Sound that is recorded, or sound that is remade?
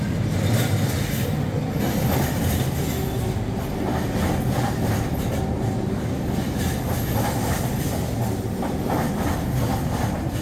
recorded